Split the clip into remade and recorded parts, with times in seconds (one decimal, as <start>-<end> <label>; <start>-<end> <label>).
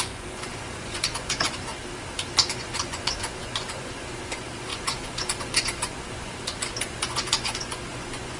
0.0-1.7 remade; 1.7-2.5 recorded; 2.5-8.4 remade